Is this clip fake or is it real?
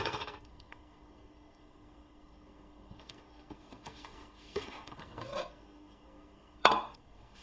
fake